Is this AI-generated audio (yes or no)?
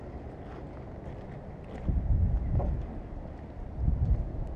yes